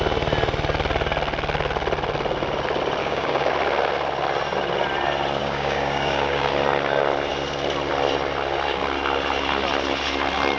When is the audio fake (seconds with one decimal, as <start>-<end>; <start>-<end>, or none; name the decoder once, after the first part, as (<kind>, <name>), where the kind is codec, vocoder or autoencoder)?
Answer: 3.0-3.5 (codec, DAC); 5.4-6.5